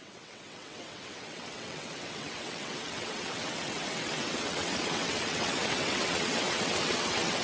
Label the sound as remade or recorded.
remade